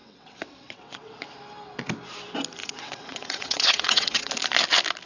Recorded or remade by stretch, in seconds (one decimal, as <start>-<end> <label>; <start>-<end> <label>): 0.0-1.2 remade; 1.2-2.6 recorded; 2.6-4.3 remade; 4.3-5.1 recorded